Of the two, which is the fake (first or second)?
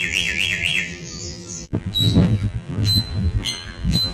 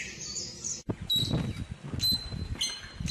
first